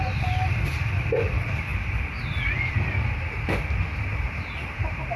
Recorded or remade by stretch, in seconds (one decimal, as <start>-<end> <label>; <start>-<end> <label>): 0.0-5.2 remade